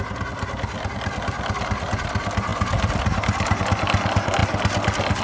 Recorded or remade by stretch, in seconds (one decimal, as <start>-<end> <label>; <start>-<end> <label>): 0.0-5.2 recorded